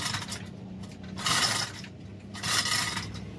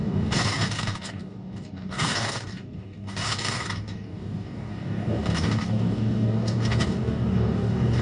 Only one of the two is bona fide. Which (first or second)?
first